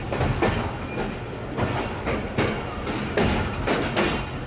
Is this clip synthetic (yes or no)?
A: no